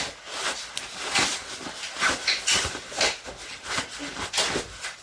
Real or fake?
real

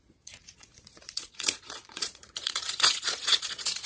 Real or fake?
fake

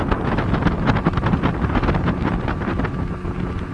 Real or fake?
real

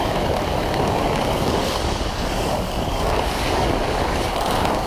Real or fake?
fake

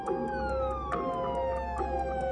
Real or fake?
real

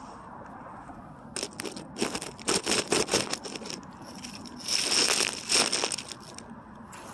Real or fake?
real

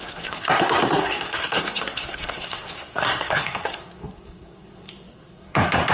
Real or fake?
fake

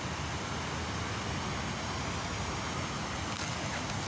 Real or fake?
real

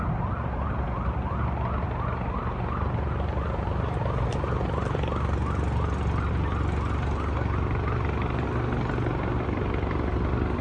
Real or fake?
real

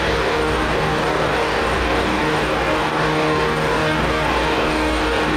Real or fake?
fake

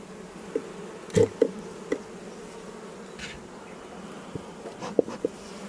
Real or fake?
real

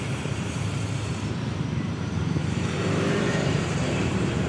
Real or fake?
fake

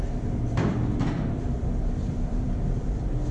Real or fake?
fake